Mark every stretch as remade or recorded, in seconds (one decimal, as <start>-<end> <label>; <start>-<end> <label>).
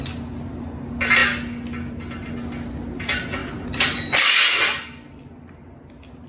0.0-6.3 recorded